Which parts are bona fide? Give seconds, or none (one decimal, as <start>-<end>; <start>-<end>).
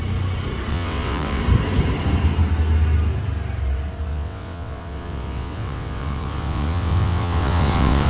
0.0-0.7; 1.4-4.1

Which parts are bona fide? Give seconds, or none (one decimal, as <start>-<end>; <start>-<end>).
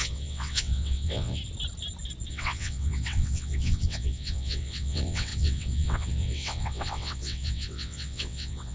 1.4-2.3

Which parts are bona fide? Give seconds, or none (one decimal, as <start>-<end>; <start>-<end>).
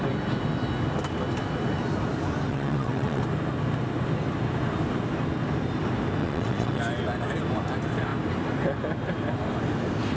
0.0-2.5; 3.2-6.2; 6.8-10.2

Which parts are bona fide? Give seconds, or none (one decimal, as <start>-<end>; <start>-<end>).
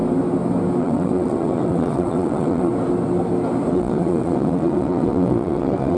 0.0-0.8; 2.7-3.7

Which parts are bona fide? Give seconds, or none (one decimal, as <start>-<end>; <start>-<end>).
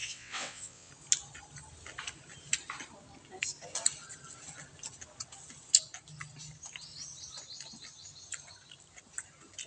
0.9-9.7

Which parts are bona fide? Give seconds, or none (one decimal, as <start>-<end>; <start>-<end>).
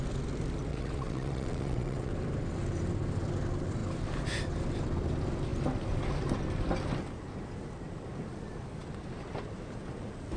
0.0-0.7; 2.1-10.4